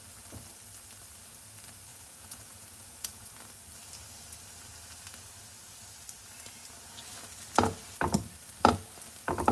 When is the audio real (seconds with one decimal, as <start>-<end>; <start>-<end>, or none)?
0.0-1.9; 3.5-9.5